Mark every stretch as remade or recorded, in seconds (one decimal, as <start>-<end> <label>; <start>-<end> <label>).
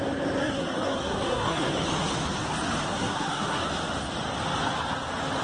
0.0-0.4 recorded; 0.4-1.7 remade; 1.7-2.9 recorded; 2.9-3.7 remade; 3.7-5.4 recorded